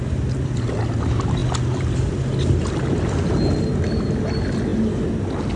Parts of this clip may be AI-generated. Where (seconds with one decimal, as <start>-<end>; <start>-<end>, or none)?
none